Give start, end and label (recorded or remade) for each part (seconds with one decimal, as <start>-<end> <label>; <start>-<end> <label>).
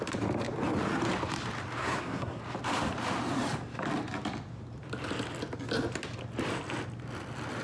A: 0.0-1.8 recorded; 1.8-2.4 remade; 2.4-7.6 recorded